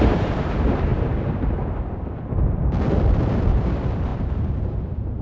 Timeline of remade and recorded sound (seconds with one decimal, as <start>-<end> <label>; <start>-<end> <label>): 0.0-0.9 remade; 0.9-3.4 recorded; 3.4-5.2 remade